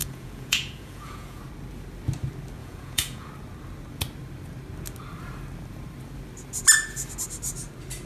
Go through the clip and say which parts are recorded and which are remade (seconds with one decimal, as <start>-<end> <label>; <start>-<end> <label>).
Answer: 0.0-1.4 remade; 1.4-2.6 recorded; 2.6-3.3 remade; 3.3-8.1 recorded